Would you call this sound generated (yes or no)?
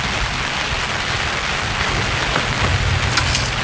no